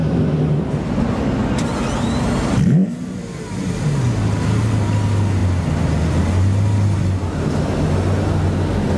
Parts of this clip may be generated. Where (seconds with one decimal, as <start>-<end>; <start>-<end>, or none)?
none